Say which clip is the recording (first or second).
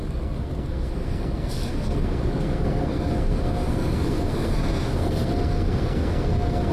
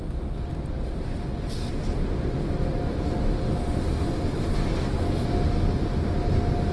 second